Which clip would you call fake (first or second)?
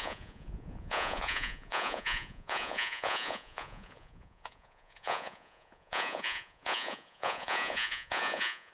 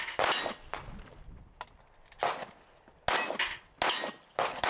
first